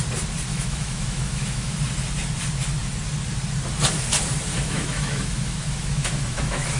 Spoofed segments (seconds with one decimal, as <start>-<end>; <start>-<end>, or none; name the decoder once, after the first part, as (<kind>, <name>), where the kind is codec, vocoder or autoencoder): 0.5-1.8 (autoencoder, DAC-VAE); 4.5-6.8

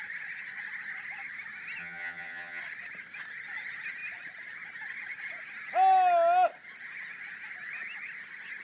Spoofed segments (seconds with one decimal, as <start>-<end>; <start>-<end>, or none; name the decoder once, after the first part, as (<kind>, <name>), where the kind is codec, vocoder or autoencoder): 1.8-2.6 (vocoder, HiFi-GAN)